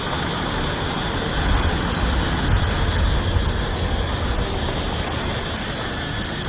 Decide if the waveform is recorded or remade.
recorded